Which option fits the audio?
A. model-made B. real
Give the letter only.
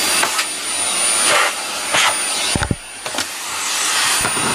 B